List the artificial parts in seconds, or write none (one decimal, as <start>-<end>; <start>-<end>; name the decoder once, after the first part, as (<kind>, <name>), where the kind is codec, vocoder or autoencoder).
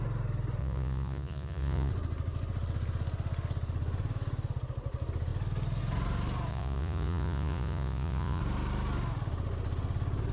0.6-1.9 (vocoder, Vocos); 6.5-8.4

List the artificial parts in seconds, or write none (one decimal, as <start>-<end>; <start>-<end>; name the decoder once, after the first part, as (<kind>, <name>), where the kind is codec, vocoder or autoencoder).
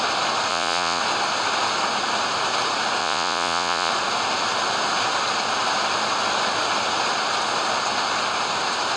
0.5-1.0 (vocoder, Vocos); 3.0-3.9